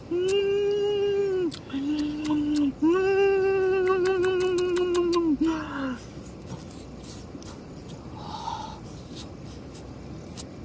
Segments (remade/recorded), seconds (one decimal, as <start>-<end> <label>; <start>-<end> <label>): 0.0-10.6 recorded